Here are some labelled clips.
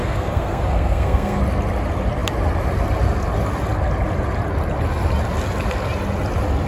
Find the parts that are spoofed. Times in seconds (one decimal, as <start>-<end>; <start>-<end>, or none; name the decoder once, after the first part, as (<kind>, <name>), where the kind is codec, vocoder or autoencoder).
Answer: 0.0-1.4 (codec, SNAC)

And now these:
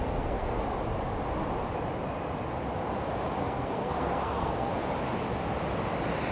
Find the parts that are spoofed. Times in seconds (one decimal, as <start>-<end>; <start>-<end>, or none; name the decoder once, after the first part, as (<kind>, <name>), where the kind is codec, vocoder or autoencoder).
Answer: 0.0-0.6 (codec, SNAC); 3.4-4.7

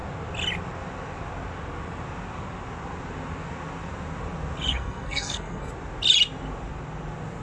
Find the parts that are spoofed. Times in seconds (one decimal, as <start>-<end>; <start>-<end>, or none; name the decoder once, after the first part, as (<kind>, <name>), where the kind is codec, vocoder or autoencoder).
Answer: 4.7-5.7 (codec, SNAC)

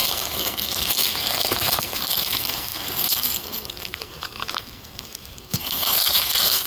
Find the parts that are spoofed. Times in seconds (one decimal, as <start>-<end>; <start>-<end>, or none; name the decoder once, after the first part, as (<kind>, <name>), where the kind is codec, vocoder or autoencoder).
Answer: 0.0-6.7 (codec, SNAC)

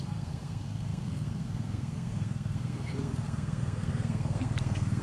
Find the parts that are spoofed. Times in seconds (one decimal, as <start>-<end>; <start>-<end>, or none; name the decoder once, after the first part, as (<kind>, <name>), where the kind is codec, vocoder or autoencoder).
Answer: 0.0-5.0 (codec, SNAC)

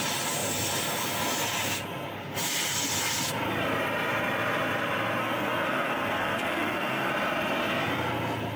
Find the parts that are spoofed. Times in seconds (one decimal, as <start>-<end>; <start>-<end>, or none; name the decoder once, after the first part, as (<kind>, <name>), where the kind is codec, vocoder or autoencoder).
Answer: 5.2-7.1 (codec, SNAC)

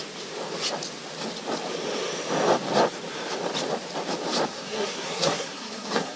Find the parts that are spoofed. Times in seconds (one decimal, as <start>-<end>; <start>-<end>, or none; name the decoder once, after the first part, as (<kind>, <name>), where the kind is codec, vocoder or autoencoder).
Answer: 4.5-6.2 (codec, SNAC)